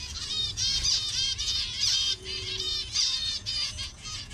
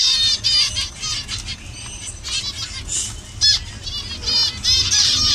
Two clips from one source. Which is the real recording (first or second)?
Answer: second